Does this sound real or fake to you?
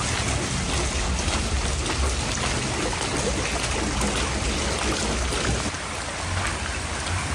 real